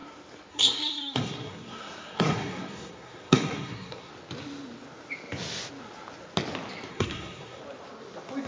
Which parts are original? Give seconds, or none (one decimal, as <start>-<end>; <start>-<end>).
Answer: 0.0-0.5; 4.1-6.9; 7.6-8.5